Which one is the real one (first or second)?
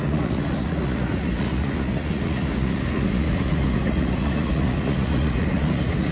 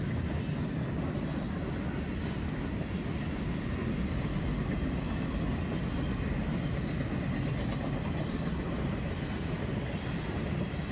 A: second